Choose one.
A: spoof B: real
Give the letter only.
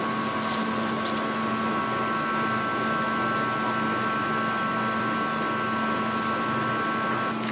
B